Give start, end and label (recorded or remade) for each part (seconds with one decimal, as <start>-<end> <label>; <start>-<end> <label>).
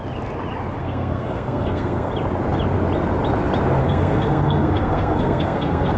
0.0-0.8 recorded; 0.8-2.1 remade; 2.1-3.8 recorded; 3.8-6.0 remade